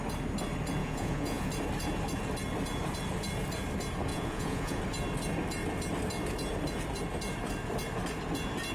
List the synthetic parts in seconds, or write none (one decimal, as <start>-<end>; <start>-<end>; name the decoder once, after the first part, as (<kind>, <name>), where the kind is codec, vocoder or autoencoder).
0.8-1.5 (vocoder, Vocos); 4.1-4.8